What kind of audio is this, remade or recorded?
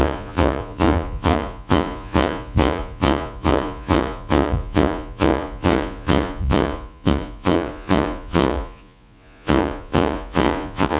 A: remade